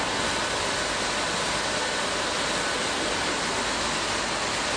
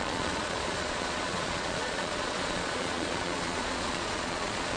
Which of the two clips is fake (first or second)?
second